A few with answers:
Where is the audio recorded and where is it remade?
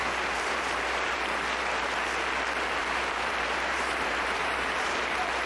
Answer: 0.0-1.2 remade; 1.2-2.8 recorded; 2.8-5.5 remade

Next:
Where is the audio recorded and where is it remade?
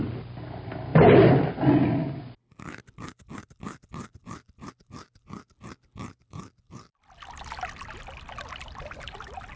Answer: 0.0-9.6 recorded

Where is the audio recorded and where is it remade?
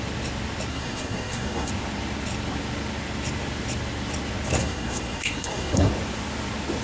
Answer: 0.0-0.7 recorded; 0.7-1.7 remade; 1.7-4.6 recorded; 4.6-5.9 remade; 5.9-6.8 recorded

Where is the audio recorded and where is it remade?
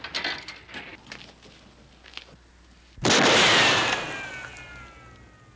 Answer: 0.0-5.6 recorded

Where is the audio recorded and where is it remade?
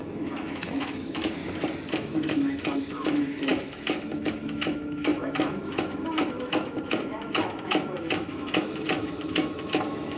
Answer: 0.0-1.4 remade; 1.4-1.9 recorded; 1.9-10.2 remade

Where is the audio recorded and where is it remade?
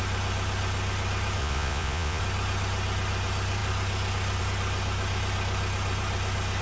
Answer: 0.0-1.4 recorded; 1.4-2.2 remade; 2.2-6.6 recorded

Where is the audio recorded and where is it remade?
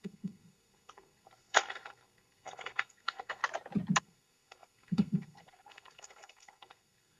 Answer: 0.0-3.4 remade; 3.4-4.0 recorded; 4.0-7.2 remade